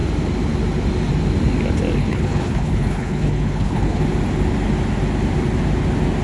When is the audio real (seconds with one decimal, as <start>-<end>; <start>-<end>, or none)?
0.0-2.0; 4.0-6.2